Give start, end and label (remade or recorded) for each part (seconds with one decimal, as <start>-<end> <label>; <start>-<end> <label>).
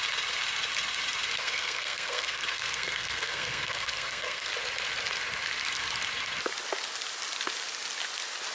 0.0-1.4 recorded; 1.4-4.5 remade; 4.5-8.5 recorded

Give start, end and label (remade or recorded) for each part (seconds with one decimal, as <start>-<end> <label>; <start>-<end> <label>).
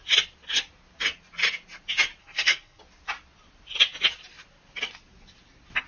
0.0-2.2 recorded; 2.2-2.8 remade; 2.8-5.9 recorded